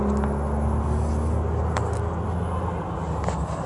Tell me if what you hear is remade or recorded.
recorded